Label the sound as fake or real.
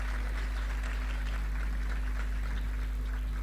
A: real